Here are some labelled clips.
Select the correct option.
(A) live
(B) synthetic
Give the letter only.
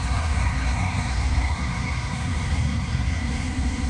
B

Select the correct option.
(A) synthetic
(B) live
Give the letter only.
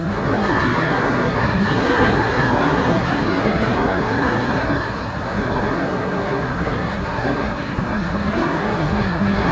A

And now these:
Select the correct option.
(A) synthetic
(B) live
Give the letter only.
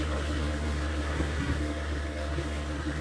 A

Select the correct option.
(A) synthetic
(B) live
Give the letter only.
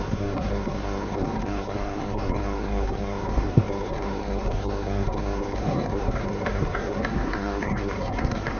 A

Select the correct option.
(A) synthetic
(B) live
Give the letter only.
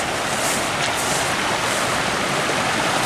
B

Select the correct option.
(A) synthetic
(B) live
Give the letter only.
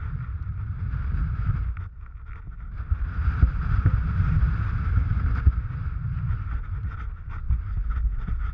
B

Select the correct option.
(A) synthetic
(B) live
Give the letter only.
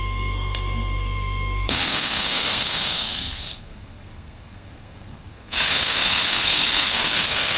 A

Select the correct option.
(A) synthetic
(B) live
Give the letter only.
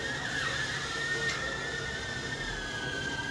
B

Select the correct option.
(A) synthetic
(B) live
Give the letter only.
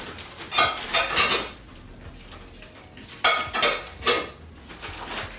B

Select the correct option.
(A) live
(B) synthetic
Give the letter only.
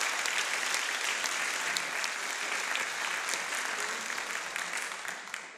A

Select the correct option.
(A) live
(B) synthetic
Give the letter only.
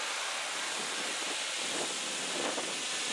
A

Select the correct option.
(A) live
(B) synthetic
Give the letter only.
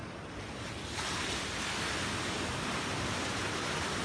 A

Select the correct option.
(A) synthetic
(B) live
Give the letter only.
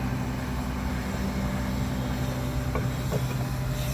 B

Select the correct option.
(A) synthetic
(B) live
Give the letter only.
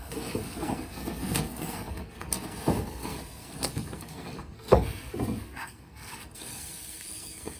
A